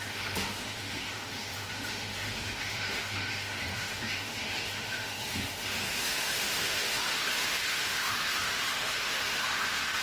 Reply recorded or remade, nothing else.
remade